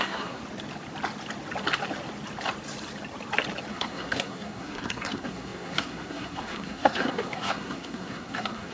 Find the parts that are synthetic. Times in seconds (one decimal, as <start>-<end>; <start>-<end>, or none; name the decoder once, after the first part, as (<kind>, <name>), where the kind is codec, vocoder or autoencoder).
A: 0.0-0.4 (codec, SNAC); 3.7-8.7

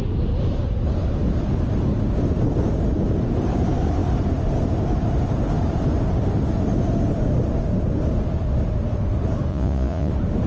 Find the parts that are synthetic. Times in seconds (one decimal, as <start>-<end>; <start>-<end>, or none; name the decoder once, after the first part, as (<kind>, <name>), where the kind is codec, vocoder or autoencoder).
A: 9.5-10.1 (vocoder, Vocos)

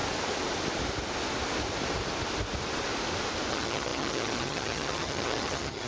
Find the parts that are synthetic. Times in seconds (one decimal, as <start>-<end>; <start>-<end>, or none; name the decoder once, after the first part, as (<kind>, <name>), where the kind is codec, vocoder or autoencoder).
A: 3.5-5.9 (vocoder, HiFi-GAN)

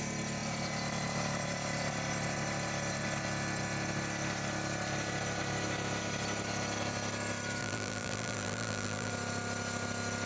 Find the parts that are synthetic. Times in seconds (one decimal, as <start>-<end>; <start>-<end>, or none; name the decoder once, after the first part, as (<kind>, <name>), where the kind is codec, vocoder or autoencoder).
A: 7.6-9.1 (vocoder, BigVGAN v2)

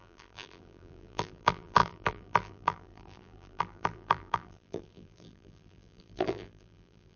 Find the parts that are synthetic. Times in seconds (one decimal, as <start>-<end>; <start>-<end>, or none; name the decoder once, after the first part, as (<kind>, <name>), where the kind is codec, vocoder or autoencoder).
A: 0.0-7.2 (vocoder, BigVGAN v2)

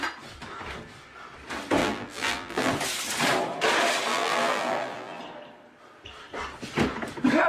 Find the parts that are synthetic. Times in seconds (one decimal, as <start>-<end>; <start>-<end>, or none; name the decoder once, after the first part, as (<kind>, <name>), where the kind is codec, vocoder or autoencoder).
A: 1.8-2.7 (vocoder, BigVGAN v2); 4.1-5.2

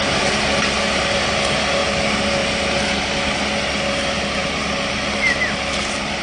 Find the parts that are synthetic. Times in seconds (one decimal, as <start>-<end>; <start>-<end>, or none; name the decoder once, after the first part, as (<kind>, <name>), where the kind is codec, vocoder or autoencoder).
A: none